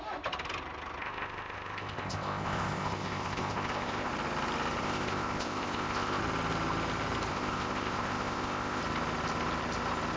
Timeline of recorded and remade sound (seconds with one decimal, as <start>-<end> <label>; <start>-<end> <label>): 0.0-1.0 recorded; 1.0-4.1 remade; 4.1-4.8 recorded; 4.8-6.2 remade; 6.2-7.3 recorded; 7.3-8.8 remade; 8.8-10.2 recorded